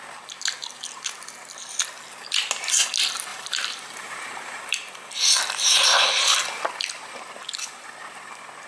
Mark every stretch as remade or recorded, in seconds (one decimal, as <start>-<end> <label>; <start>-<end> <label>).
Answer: 0.0-3.3 recorded; 3.3-4.6 remade; 4.6-8.7 recorded